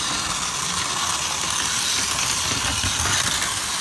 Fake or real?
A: real